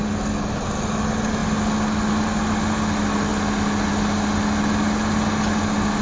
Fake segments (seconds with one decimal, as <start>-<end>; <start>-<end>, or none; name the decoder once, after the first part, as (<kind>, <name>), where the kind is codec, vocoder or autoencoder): none